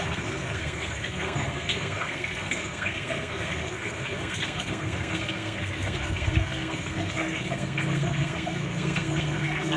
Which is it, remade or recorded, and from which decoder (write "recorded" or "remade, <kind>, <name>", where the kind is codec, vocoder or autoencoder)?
remade, codec, SNAC